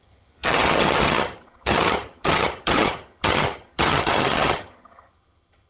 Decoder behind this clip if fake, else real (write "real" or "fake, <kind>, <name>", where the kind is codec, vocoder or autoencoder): fake, vocoder, HiFi-GAN